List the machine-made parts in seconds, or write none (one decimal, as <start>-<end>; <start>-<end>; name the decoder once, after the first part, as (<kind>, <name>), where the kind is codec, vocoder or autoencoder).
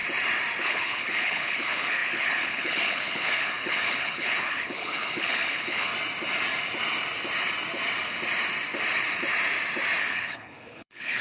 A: 0.6-5.9 (codec, HILCodec); 10.0-11.2